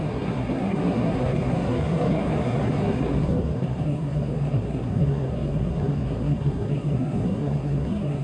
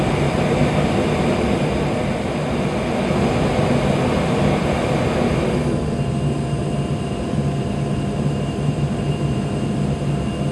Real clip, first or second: second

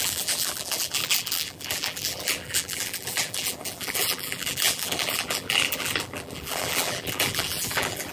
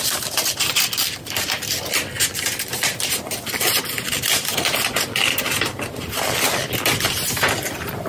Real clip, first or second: second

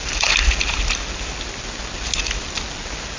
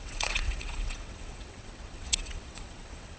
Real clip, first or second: first